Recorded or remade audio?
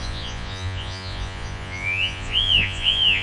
remade